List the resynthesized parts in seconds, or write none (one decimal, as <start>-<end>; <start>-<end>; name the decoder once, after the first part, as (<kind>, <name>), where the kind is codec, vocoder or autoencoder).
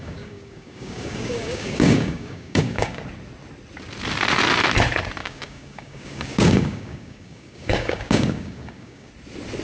0.0-3.0 (codec, DAC); 5.2-9.1